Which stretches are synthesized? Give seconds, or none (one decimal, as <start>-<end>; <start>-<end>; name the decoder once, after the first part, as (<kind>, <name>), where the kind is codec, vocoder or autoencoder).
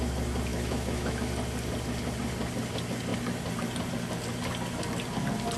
0.5-1.3 (autoencoder, DAC-VAE)